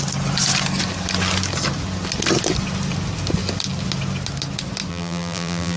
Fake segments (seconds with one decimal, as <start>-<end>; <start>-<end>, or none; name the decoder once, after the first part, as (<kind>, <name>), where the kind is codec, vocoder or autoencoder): 4.9-5.8 (vocoder, BigVGAN v2)